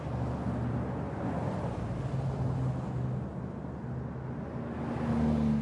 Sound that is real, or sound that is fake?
real